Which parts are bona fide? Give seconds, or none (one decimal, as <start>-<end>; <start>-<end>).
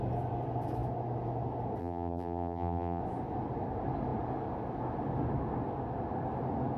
0.0-1.8; 3.0-6.8